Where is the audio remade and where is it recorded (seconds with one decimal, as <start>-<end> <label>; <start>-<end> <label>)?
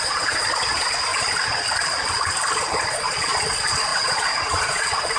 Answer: 0.0-1.1 remade; 1.1-2.9 recorded; 2.9-5.2 remade